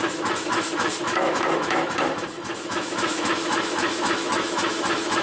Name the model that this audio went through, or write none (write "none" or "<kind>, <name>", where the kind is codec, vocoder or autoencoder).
autoencoder, DAC-VAE